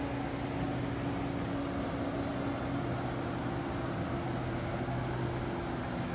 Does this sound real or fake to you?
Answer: real